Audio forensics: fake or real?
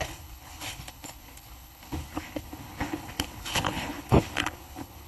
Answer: fake